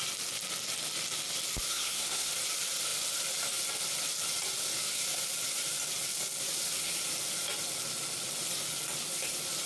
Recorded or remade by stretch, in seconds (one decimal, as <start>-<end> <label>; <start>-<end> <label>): 0.0-1.7 recorded; 1.7-2.3 remade; 2.3-9.7 recorded